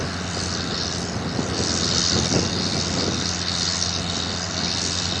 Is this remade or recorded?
recorded